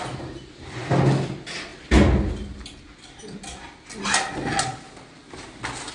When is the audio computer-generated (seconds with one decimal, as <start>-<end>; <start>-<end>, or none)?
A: none